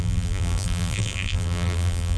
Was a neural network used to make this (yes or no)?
yes